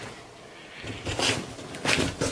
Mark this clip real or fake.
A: real